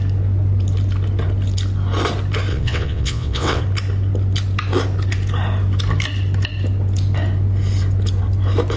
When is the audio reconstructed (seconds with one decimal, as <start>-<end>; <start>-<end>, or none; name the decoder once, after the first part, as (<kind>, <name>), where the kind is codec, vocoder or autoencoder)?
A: 2.5-3.6 (vocoder, WaveNeXt)